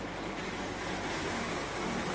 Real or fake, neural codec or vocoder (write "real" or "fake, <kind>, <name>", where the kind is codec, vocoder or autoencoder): real